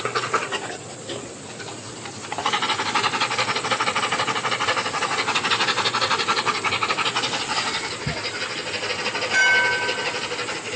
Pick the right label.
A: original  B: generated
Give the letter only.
A